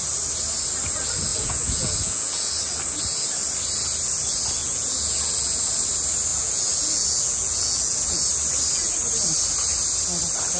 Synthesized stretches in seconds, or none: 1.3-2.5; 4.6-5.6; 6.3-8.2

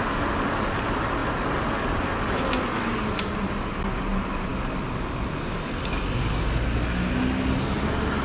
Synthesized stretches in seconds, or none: none